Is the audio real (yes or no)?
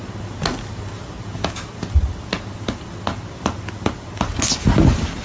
yes